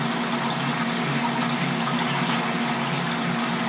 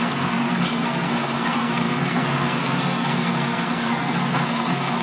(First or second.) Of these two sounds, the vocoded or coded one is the second